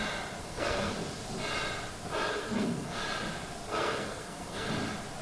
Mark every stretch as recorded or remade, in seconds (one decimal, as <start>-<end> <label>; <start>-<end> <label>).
0.0-0.4 recorded; 0.4-0.9 remade; 0.9-2.3 recorded; 2.3-3.0 remade; 3.0-3.7 recorded; 3.7-4.7 remade; 4.7-5.2 recorded